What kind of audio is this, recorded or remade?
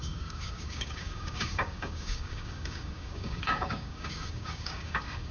remade